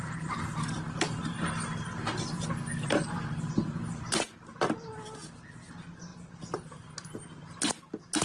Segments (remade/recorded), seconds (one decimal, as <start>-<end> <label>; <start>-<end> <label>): 0.0-8.2 recorded